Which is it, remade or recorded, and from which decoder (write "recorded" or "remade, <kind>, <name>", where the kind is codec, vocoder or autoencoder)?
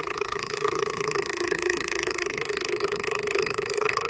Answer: remade, codec, SNAC